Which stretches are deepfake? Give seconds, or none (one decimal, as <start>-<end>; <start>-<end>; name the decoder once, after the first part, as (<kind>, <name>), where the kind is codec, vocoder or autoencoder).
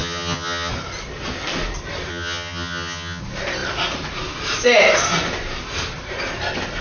0.0-0.7 (vocoder, HiFi-GAN); 2.1-3.2